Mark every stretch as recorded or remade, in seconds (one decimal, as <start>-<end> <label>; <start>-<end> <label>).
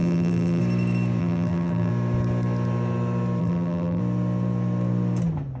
0.0-0.6 remade; 0.6-1.2 recorded; 1.2-1.9 remade; 1.9-3.4 recorded; 3.4-4.0 remade; 4.0-5.6 recorded